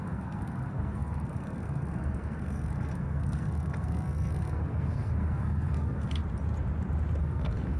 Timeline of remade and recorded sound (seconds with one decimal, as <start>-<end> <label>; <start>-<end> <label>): 0.0-6.2 remade; 6.2-7.2 recorded; 7.2-7.8 remade